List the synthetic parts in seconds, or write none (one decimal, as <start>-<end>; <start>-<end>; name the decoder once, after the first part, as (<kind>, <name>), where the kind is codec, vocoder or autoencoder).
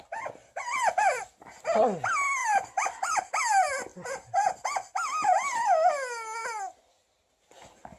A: 0.4-1.6 (vocoder, BigVGAN v2); 2.4-3.4; 3.9-4.6